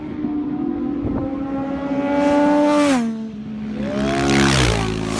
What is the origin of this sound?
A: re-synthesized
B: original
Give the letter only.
B